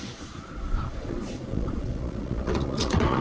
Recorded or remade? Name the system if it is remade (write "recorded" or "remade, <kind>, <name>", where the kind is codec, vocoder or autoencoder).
remade, vocoder, Vocos